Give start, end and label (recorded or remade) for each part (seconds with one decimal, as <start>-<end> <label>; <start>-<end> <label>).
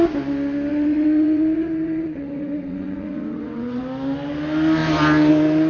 0.0-0.7 recorded; 0.7-3.8 remade; 3.8-5.7 recorded